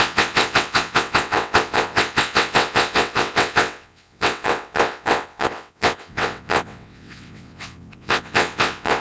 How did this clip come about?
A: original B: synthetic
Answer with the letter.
B